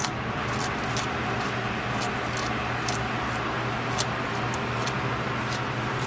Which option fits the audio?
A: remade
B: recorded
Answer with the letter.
B